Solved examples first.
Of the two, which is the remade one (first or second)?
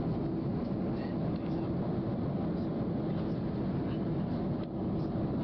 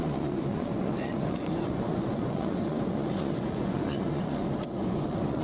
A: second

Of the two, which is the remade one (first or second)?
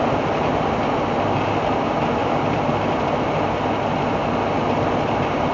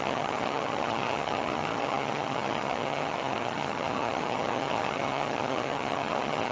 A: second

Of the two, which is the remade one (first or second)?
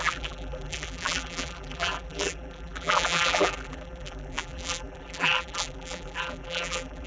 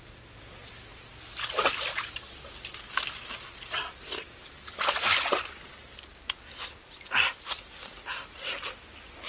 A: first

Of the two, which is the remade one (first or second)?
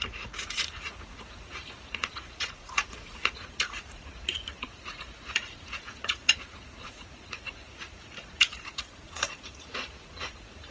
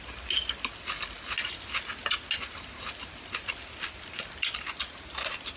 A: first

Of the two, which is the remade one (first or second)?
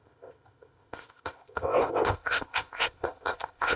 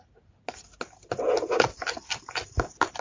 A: first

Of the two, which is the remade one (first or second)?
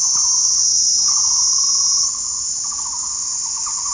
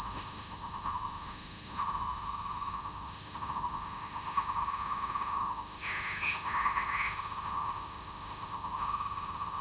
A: second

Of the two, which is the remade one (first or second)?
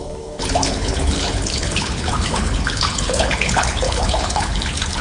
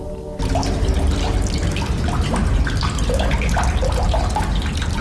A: first